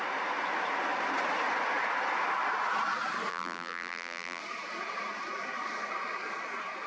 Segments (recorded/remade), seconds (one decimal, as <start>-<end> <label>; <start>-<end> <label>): 0.0-3.3 recorded; 3.3-4.4 remade; 4.4-6.9 recorded